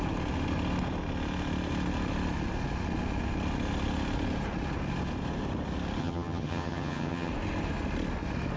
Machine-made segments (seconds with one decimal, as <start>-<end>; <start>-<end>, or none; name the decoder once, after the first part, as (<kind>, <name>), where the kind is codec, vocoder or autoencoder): 6.0-7.3 (vocoder, HiFi-GAN)